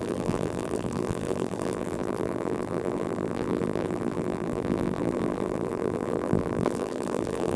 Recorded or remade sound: remade